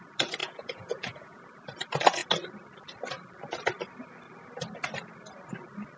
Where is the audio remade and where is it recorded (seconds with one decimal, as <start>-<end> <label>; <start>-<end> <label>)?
0.0-0.4 recorded; 0.4-1.4 remade; 1.4-6.0 recorded